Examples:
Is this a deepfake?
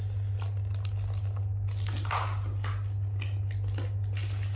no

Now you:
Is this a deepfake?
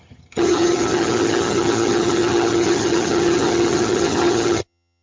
yes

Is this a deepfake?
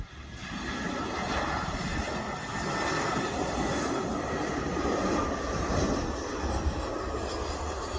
no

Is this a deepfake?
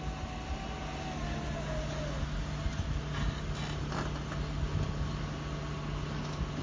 no